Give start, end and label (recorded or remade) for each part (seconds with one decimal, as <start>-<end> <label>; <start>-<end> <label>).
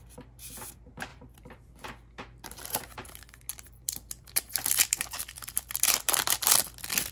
0.0-1.1 recorded; 1.1-1.7 remade; 1.7-3.5 recorded; 3.5-6.3 remade; 6.3-7.1 recorded